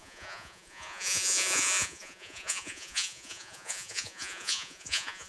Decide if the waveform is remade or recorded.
remade